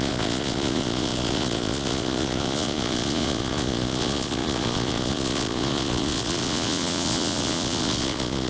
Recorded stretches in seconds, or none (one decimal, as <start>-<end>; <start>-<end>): none